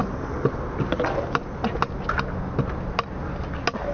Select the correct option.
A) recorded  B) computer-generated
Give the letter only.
A